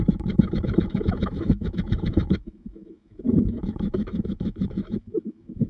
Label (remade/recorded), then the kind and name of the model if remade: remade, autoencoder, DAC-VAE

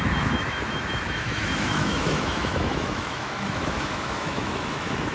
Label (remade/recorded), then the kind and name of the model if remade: remade, autoencoder, DAC-VAE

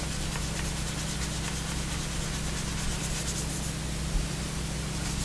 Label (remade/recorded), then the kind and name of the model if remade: recorded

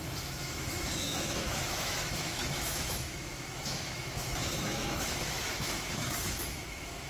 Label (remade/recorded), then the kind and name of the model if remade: remade, autoencoder, DAC-VAE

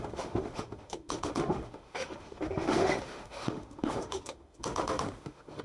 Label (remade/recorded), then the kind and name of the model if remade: remade, autoencoder, DAC-VAE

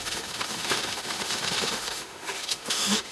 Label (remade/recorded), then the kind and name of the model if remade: remade, autoencoder, DAC-VAE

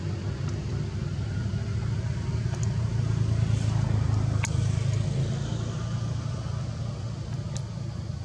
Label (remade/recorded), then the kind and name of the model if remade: recorded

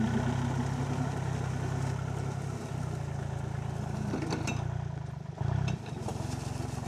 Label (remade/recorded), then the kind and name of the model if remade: recorded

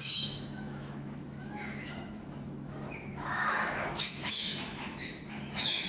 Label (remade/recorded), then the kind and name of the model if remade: remade, autoencoder, DAC-VAE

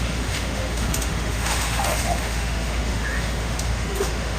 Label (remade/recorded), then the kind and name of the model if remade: remade, autoencoder, DAC-VAE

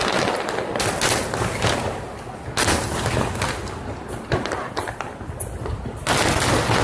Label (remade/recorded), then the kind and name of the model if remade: recorded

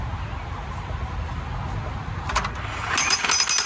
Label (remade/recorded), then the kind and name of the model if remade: recorded